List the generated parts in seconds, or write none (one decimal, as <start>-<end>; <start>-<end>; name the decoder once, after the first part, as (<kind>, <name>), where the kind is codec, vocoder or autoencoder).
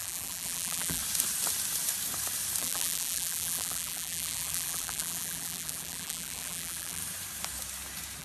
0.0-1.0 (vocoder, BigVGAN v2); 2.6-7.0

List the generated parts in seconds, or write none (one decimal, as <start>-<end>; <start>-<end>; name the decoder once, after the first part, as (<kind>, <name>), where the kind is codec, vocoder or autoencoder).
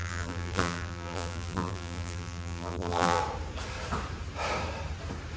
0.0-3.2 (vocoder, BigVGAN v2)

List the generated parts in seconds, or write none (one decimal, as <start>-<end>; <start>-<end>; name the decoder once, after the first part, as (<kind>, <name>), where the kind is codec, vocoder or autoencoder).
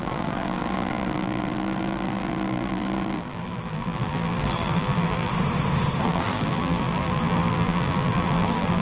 0.0-5.3 (vocoder, BigVGAN v2); 6.0-8.8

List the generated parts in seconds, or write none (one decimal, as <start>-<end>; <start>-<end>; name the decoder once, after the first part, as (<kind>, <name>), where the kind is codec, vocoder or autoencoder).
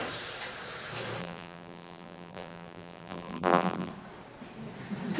1.2-3.9 (vocoder, BigVGAN v2)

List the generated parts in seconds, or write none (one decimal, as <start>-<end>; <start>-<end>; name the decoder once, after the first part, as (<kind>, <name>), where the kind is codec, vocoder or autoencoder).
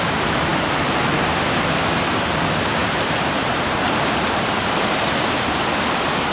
2.8-6.3 (vocoder, BigVGAN v2)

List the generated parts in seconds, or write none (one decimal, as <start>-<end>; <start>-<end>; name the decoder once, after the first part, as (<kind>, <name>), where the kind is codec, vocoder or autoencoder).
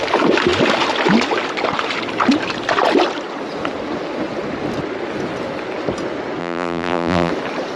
6.4-7.3 (vocoder, BigVGAN v2)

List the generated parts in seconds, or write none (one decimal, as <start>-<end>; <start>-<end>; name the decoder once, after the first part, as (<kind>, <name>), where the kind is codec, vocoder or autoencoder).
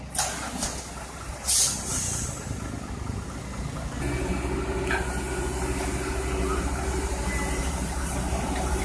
6.5-8.8 (vocoder, BigVGAN v2)